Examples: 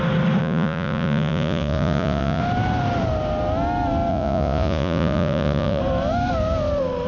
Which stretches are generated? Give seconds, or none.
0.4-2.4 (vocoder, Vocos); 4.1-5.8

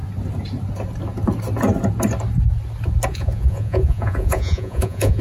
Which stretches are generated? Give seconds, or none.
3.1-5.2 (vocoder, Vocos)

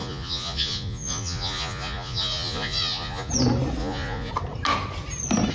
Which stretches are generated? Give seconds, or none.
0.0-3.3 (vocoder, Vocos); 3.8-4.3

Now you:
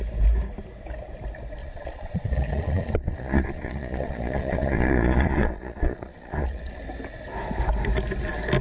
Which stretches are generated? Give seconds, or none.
1.6-6.8 (vocoder, Vocos)

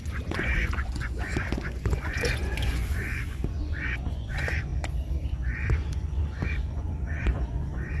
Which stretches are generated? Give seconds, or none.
0.0-4.7 (vocoder, Vocos); 5.3-8.0

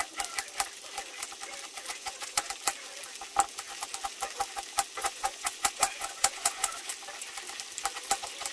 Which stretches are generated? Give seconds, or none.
1.9-2.5 (vocoder, Vocos); 5.0-6.9

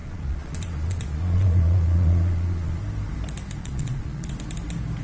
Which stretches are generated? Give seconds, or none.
0.0-2.8 (vocoder, Vocos); 3.6-4.3